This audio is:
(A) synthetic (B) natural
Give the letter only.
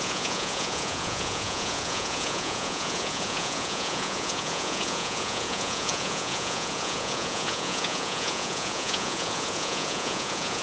A